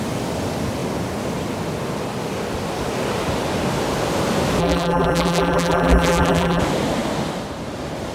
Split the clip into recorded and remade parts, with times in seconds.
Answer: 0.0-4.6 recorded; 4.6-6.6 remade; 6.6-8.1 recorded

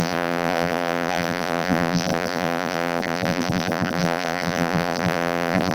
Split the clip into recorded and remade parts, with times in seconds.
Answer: 0.0-5.7 remade

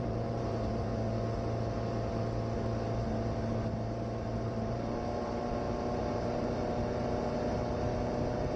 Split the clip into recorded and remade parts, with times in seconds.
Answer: 0.0-0.9 remade; 0.9-3.5 recorded; 3.5-8.6 remade

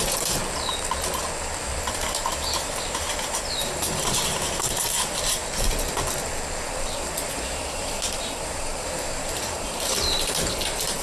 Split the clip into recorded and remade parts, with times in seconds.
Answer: 0.0-0.4 remade; 0.4-1.8 recorded; 1.8-5.4 remade; 5.4-7.0 recorded; 7.0-11.0 remade

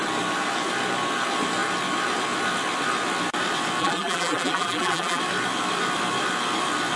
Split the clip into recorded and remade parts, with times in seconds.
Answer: 0.0-3.8 recorded; 3.8-5.2 remade; 5.2-7.0 recorded

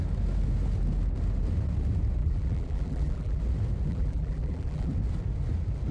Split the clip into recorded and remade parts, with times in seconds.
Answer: 0.0-2.2 recorded; 2.2-3.4 remade; 3.4-3.9 recorded; 3.9-4.9 remade; 4.9-5.9 recorded

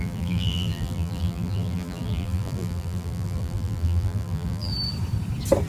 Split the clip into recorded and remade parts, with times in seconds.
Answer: 0.0-4.7 remade; 4.7-5.7 recorded

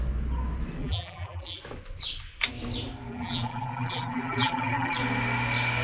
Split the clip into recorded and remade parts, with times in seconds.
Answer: 0.0-0.8 recorded; 0.8-1.6 remade; 1.6-3.1 recorded; 3.1-5.0 remade; 5.0-5.8 recorded